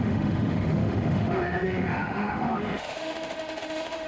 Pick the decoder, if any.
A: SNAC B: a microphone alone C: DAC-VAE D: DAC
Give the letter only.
C